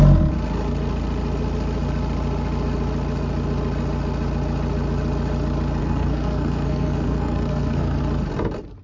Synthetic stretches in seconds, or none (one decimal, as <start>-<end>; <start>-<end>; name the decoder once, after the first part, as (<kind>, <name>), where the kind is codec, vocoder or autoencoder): 5.8-8.0 (codec, SNAC)